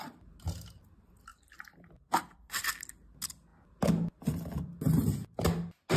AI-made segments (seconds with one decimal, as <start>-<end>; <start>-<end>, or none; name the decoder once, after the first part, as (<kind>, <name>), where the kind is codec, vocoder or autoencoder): 1.3-2.7 (vocoder, BigVGAN v2)